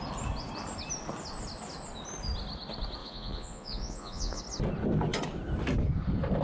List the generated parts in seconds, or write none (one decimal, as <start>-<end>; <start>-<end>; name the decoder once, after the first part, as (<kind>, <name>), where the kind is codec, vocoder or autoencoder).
3.0-4.4 (vocoder, Vocos)